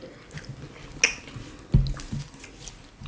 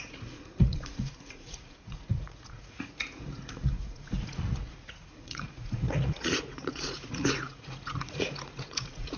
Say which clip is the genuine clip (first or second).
first